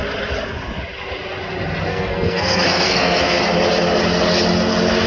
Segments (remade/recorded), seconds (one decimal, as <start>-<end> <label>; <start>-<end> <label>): 0.0-1.9 recorded; 1.9-3.4 remade; 3.4-5.1 recorded